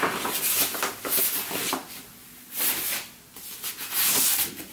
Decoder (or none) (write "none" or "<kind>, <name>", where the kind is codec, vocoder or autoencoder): none